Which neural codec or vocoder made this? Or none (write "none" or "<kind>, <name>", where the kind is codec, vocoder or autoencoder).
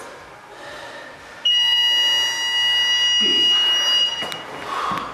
none